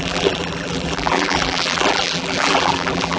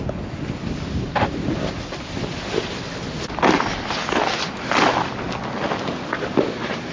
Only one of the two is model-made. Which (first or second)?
first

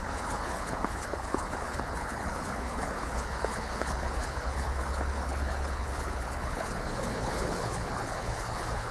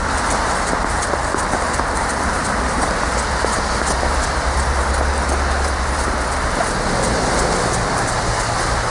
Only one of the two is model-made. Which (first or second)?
first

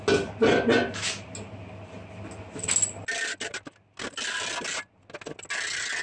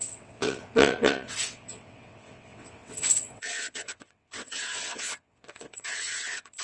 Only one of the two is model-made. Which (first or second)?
second